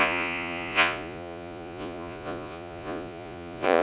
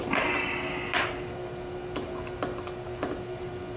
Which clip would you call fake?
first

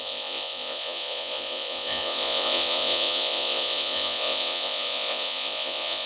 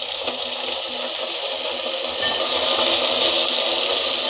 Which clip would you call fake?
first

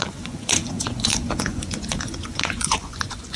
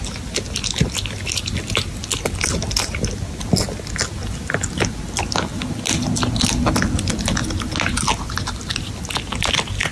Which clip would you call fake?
first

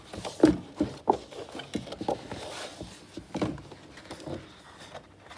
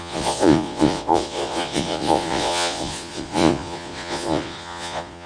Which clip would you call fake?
second